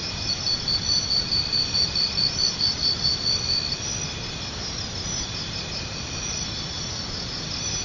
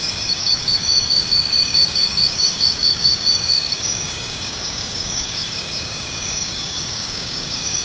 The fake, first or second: second